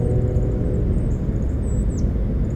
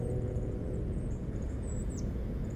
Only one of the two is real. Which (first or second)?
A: first